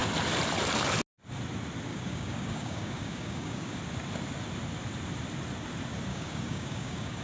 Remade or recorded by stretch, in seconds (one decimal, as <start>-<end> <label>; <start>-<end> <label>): 0.0-1.9 recorded; 1.9-3.8 remade; 3.8-6.1 recorded; 6.1-7.2 remade